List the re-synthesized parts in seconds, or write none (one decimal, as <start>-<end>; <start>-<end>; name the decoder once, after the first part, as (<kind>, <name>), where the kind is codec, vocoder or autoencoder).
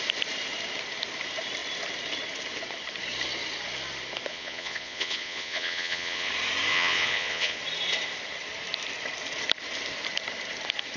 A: 4.3-6.3 (vocoder, Vocos); 6.7-7.6